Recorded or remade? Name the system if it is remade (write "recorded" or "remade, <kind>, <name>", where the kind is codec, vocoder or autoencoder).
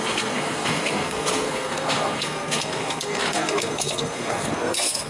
remade, codec, SNAC